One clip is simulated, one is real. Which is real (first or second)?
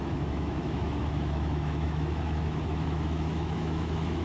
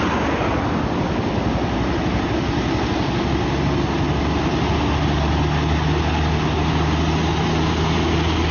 second